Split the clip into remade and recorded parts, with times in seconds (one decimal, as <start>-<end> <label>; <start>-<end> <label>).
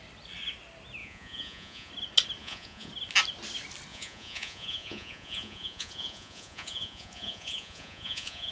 0.0-1.0 recorded; 1.0-1.9 remade; 1.9-2.4 recorded; 2.4-2.9 remade; 2.9-3.9 recorded; 3.9-8.5 remade